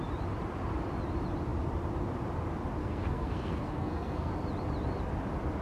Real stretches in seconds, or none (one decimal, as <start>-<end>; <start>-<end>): 0.0-2.8; 4.3-5.6